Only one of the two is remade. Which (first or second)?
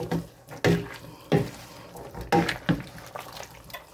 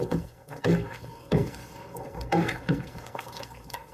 second